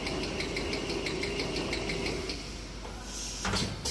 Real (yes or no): yes